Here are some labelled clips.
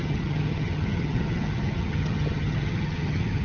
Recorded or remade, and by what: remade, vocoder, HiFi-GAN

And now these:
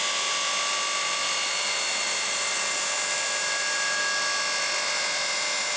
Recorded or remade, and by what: recorded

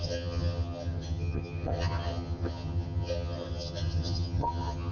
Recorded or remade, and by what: remade, vocoder, HiFi-GAN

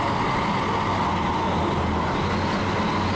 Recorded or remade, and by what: recorded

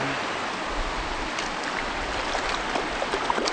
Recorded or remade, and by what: recorded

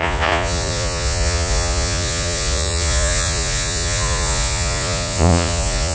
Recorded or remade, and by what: remade, vocoder, Vocos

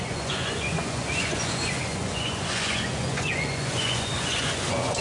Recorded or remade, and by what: remade, vocoder, Vocos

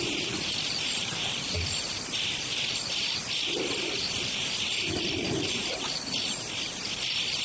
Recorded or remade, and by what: recorded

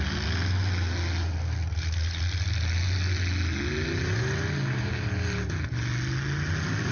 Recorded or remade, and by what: recorded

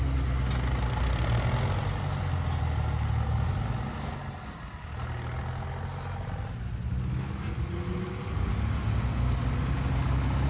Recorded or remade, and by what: recorded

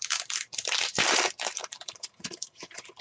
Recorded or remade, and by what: remade, vocoder, BigVGAN v2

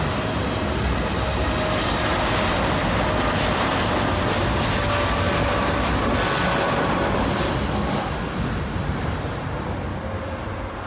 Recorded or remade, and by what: recorded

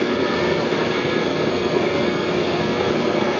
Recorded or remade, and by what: remade, codec, SNAC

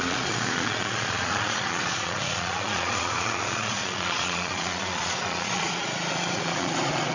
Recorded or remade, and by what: remade, vocoder, Vocos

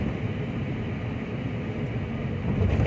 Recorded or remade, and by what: recorded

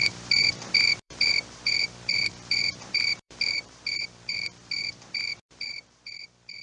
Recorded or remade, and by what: remade, vocoder, BigVGAN v2